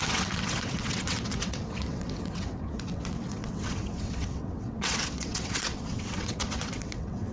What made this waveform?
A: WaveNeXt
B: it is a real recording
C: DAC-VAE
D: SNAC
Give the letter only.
A